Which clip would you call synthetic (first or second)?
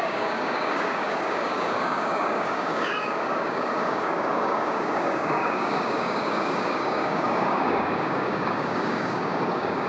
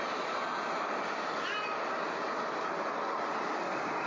first